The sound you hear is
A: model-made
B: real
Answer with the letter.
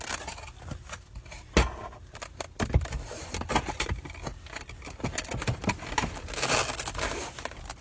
B